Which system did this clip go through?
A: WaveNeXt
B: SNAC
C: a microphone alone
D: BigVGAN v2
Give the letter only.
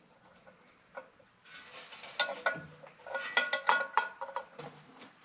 C